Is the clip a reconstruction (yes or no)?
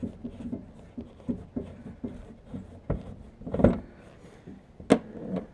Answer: no